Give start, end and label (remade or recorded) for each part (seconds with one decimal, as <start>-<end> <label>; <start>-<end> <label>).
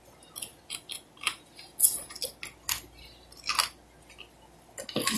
0.0-5.2 recorded